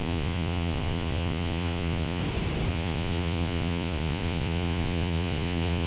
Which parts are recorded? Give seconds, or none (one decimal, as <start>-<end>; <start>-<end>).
2.2-2.7